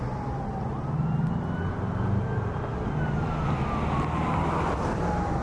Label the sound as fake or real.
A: real